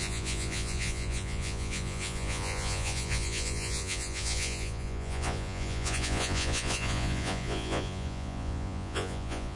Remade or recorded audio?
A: remade